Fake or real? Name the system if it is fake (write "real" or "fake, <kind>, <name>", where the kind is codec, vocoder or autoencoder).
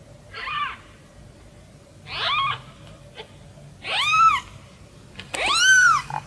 real